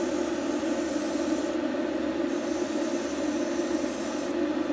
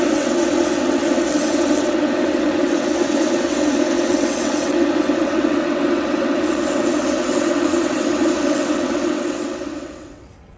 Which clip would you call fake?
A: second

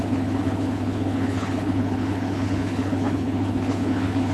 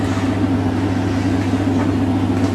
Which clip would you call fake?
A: first